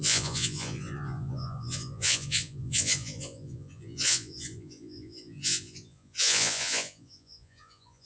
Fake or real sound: fake